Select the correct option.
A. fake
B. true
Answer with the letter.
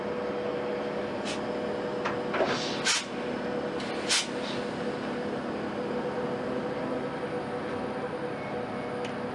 B